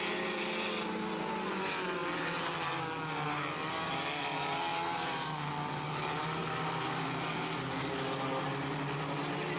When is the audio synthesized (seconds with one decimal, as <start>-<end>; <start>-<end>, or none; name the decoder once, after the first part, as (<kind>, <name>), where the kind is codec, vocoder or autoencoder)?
4.7-5.5 (vocoder, BigVGAN v2)